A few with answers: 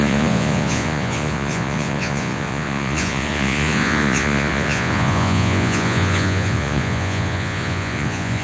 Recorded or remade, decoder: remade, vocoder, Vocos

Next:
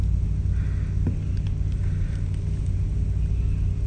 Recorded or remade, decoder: recorded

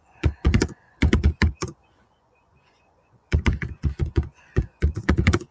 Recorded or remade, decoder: remade, vocoder, Vocos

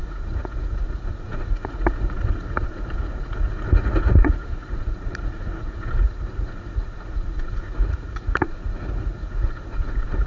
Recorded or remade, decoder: remade, vocoder, Vocos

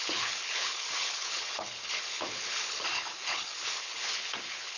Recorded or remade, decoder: remade, codec, HILCodec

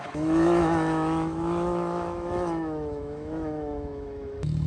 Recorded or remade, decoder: remade, autoencoder, DAC-VAE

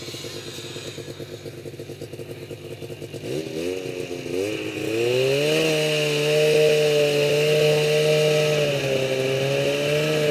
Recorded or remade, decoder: recorded